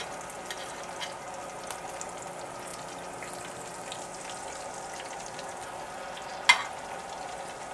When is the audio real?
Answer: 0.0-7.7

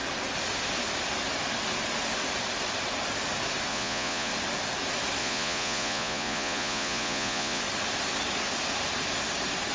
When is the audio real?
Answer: 0.0-3.7; 4.3-5.2; 7.6-9.7

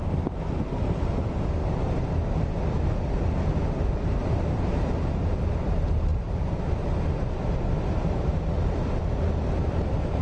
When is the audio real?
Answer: 0.0-10.2

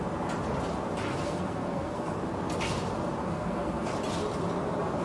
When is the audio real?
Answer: 0.0-1.1; 2.2-3.2; 3.9-5.0

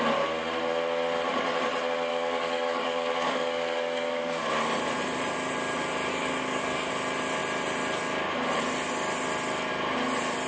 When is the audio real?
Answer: 0.0-2.1; 4.5-6.1; 6.9-10.5